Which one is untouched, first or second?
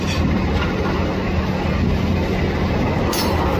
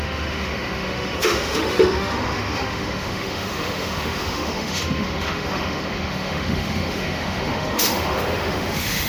first